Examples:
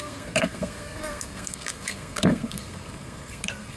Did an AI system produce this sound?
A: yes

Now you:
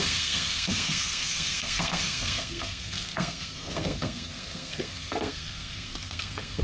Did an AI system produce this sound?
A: yes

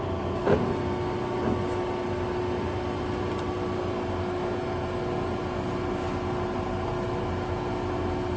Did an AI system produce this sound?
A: no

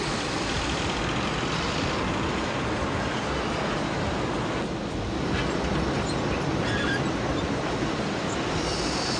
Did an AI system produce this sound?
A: no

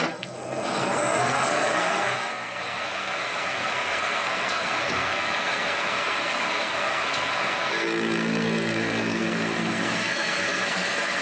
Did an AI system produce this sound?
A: yes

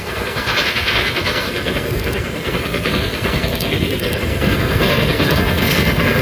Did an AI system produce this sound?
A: yes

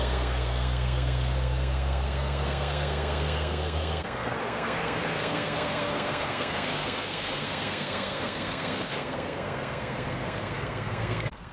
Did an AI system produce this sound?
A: yes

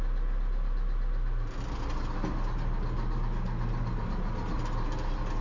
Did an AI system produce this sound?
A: no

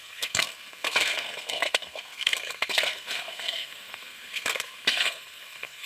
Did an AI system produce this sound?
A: yes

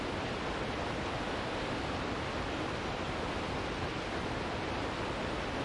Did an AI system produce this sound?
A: no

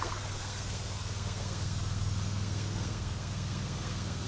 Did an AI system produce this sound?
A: yes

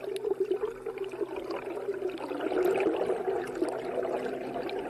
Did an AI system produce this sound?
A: no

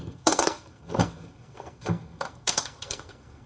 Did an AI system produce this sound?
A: yes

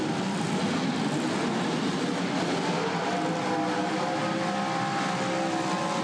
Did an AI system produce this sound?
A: no